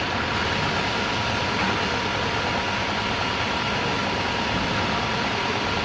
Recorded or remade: recorded